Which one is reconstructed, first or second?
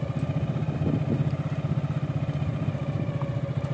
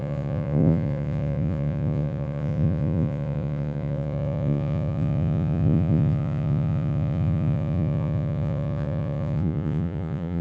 second